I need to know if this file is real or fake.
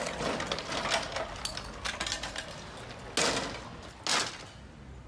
real